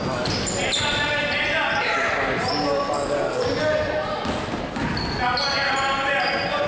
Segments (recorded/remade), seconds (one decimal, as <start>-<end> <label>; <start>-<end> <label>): 0.0-6.7 recorded